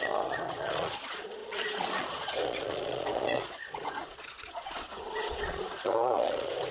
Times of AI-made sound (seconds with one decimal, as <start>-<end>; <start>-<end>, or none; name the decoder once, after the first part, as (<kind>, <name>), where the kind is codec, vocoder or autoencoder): 0.0-6.7 (vocoder, Vocos)

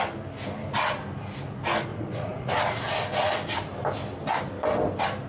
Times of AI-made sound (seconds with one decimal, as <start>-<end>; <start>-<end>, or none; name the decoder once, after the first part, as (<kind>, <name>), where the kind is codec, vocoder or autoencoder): 1.9-2.6 (vocoder, Vocos)

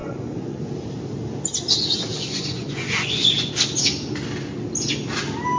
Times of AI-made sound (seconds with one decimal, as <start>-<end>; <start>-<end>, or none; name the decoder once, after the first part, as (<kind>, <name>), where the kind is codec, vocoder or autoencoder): 0.0-0.7 (vocoder, Vocos); 2.1-3.5

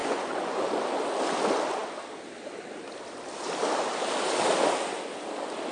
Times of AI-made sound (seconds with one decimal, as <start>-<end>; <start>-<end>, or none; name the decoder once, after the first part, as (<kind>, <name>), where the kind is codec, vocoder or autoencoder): 0.0-0.7 (vocoder, Vocos)

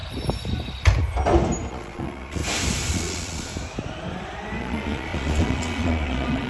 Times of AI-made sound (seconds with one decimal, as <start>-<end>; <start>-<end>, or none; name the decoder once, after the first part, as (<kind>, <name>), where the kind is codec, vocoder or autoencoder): 1.7-2.4 (vocoder, Vocos); 2.9-3.5; 4.6-6.5